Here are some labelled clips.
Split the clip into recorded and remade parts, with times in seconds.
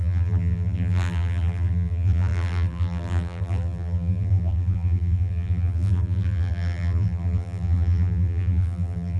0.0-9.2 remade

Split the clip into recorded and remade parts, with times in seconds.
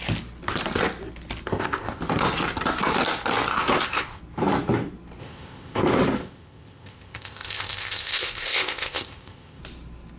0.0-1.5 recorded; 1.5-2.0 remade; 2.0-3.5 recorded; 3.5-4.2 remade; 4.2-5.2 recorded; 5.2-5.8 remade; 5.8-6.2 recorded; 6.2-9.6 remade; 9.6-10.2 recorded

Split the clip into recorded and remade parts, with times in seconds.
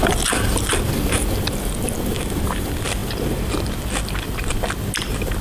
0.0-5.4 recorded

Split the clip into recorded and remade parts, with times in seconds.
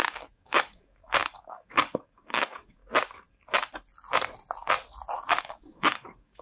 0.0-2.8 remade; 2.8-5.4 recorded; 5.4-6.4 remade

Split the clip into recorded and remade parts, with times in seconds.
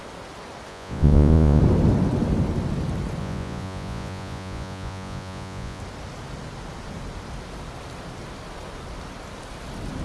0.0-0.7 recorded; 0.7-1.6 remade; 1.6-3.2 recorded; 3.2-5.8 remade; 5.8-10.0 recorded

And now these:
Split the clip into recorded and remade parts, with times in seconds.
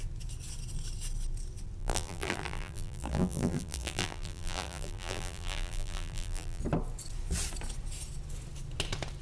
0.0-1.8 recorded; 1.8-6.6 remade; 6.6-9.2 recorded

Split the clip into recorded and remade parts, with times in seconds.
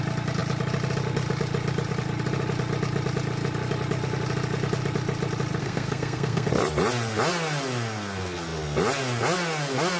0.0-5.6 recorded; 5.6-6.5 remade; 6.5-10.0 recorded